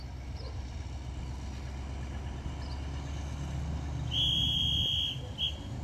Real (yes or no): yes